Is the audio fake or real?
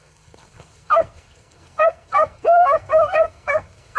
fake